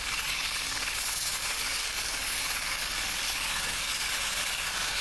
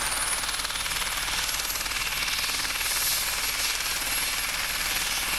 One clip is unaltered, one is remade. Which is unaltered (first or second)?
second